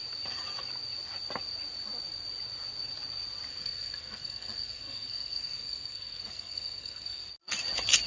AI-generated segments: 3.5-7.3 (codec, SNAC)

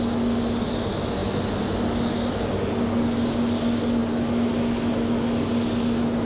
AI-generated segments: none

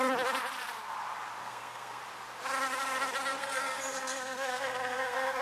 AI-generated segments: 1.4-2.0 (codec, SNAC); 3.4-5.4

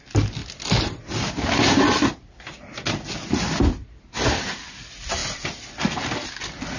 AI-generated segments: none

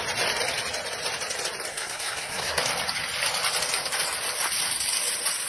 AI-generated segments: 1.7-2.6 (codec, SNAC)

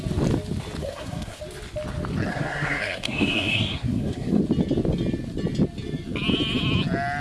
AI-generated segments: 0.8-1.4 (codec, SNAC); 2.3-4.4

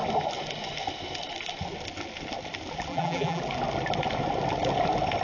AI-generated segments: 2.9-3.4 (vocoder, BigVGAN v2)

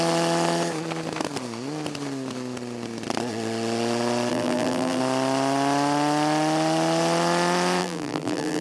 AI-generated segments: 4.3-5.0 (vocoder, BigVGAN v2); 7.8-8.6